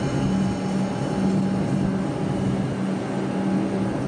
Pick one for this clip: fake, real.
real